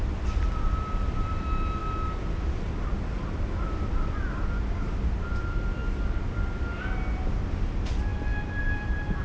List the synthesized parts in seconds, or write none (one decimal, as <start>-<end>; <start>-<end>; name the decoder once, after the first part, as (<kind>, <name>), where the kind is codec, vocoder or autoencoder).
0.0-1.8 (vocoder, BigVGAN v2); 2.4-5.8; 6.8-8.1; 8.6-9.2